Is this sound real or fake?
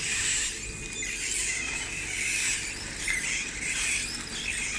real